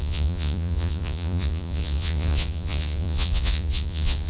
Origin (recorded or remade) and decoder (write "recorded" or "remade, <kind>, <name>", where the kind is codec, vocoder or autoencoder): remade, vocoder, Vocos